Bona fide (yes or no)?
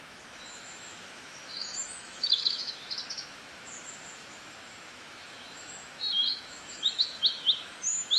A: no